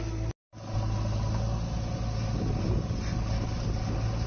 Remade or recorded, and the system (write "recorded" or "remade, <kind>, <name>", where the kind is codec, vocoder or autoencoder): recorded